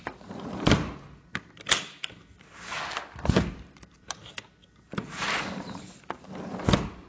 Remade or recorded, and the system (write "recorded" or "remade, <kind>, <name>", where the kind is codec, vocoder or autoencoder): recorded